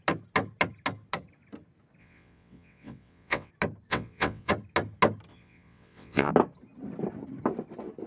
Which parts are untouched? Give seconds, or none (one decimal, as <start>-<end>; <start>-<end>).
0.0-2.0; 3.5-3.9; 4.5-5.3; 6.3-8.1